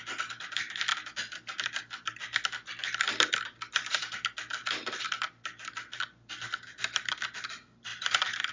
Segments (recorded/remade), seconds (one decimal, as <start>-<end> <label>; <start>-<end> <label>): 0.0-8.5 recorded